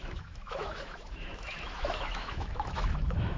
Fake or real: fake